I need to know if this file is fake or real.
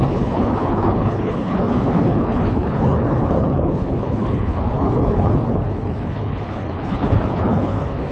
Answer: fake